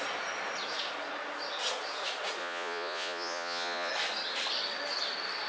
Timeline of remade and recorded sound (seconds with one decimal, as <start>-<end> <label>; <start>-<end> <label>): 0.0-2.4 recorded; 2.4-3.9 remade; 3.9-5.5 recorded